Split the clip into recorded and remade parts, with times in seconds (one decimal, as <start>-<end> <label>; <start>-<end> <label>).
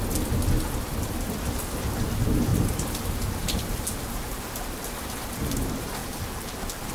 0.0-2.5 recorded; 2.5-5.0 remade; 5.0-6.0 recorded; 6.0-6.9 remade